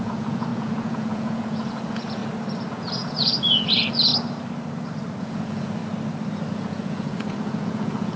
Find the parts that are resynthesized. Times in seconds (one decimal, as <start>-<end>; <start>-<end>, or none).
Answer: 0.0-2.2; 2.7-4.1; 5.2-5.8; 6.5-8.2